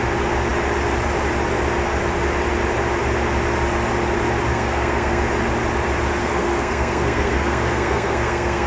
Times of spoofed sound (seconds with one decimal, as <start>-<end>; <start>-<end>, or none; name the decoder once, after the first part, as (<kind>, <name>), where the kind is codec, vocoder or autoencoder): 4.5-5.2 (codec, SNAC); 6.2-8.7

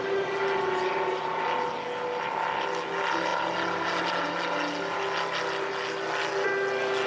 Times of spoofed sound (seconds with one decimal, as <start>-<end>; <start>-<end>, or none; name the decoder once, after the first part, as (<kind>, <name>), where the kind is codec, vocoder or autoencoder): none